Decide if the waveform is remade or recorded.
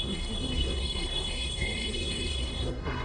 remade